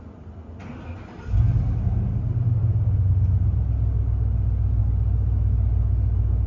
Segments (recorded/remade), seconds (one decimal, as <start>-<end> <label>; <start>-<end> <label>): 0.0-6.5 recorded

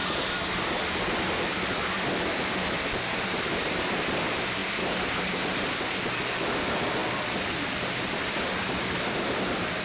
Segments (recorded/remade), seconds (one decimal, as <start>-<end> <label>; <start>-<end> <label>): 0.0-9.8 recorded

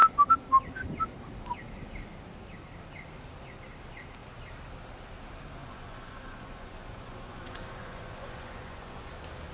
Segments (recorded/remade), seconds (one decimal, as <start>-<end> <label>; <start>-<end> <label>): 0.0-5.6 recorded; 5.6-9.1 remade; 9.1-9.5 recorded